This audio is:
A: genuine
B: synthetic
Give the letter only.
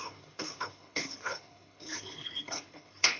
B